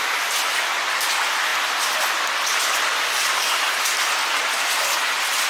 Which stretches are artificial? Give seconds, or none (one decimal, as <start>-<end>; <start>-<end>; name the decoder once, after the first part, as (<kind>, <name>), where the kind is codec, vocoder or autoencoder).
none